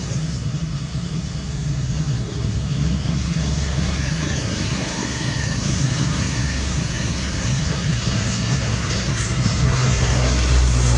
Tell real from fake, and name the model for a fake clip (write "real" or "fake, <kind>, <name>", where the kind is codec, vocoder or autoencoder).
fake, codec, SNAC